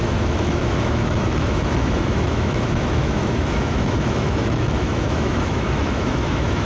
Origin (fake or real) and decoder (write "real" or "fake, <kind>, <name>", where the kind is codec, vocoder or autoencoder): fake, autoencoder, DAC-VAE